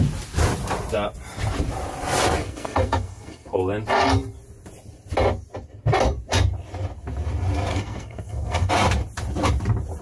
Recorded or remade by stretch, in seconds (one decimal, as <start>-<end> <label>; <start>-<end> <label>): 0.0-2.4 recorded; 2.4-3.6 remade; 3.6-7.7 recorded; 7.7-8.7 remade; 8.7-10.0 recorded